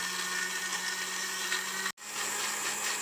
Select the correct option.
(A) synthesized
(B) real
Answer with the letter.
B